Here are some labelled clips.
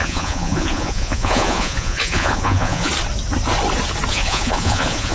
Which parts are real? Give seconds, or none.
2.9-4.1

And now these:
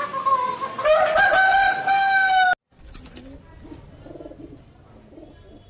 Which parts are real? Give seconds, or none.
0.0-5.7